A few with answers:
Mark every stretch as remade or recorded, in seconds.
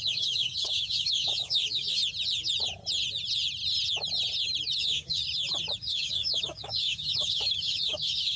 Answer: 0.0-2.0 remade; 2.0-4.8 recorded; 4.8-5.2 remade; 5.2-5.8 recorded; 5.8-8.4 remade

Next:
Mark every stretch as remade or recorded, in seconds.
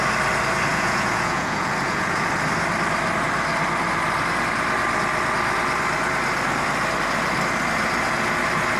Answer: 0.0-0.7 recorded; 0.7-2.3 remade; 2.3-8.8 recorded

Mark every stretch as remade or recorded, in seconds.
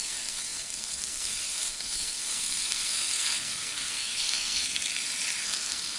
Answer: 0.0-4.9 remade; 4.9-5.4 recorded; 5.4-6.0 remade